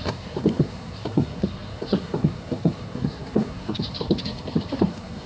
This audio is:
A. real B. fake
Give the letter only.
B